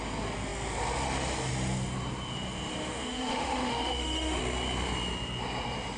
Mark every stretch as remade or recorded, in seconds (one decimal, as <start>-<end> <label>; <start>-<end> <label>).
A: 0.0-2.7 recorded; 2.7-4.4 remade; 4.4-6.0 recorded